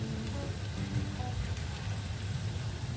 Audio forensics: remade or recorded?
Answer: recorded